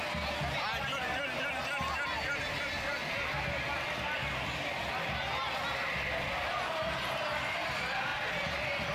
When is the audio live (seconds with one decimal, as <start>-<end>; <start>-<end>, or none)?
0.0-8.9